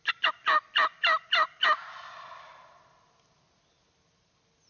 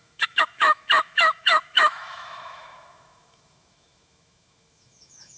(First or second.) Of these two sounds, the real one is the first